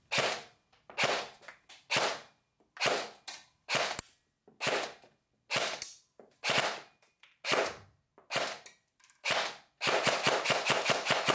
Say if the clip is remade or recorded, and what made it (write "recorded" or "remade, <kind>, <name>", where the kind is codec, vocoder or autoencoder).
recorded